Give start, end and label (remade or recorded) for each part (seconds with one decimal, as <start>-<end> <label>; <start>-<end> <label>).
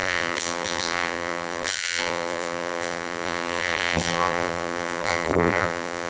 0.0-6.1 remade